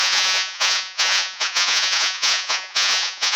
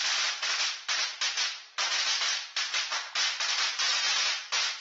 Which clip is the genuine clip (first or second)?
second